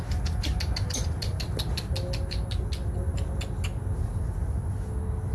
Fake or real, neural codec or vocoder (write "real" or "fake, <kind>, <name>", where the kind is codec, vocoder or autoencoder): real